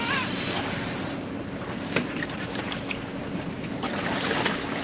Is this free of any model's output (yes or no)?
yes